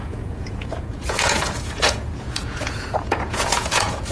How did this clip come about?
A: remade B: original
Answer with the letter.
A